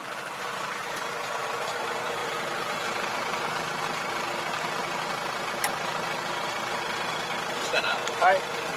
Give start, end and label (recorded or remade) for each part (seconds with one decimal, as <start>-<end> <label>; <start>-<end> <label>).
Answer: 0.0-8.8 recorded